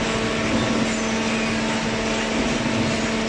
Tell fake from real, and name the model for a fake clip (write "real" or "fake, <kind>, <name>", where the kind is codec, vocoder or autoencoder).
real